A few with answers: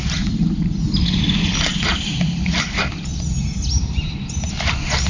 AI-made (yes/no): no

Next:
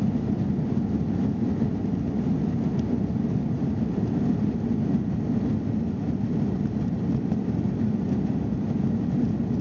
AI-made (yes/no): no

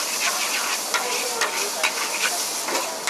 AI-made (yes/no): no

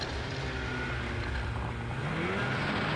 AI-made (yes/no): no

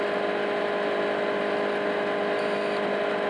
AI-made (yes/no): no